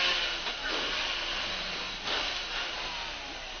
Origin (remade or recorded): recorded